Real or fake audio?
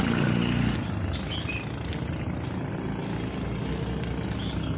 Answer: real